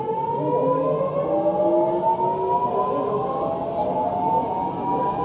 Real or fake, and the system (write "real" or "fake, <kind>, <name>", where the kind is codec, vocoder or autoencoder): real